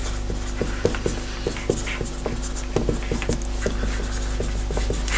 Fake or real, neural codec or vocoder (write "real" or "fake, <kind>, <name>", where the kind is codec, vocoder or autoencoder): real